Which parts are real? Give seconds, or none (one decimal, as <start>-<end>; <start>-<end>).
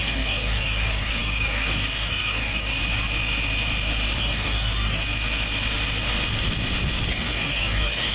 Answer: 2.8-4.2; 5.0-7.1